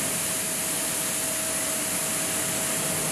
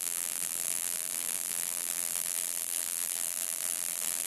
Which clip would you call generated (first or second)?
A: second